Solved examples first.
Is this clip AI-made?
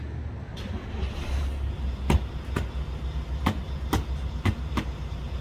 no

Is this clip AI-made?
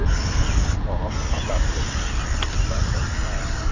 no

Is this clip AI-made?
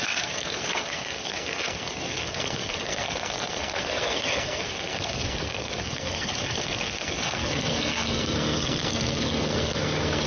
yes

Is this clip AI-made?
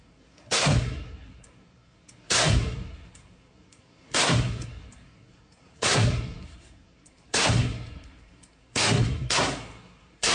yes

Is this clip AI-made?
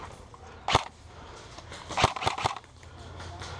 no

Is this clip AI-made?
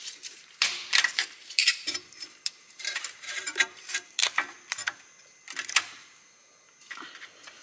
yes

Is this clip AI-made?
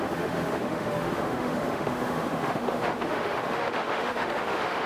yes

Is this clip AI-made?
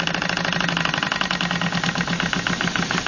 no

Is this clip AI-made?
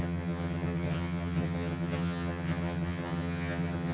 yes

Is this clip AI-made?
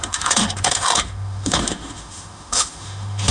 yes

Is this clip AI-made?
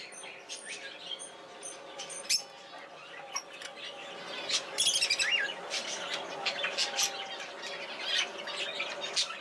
no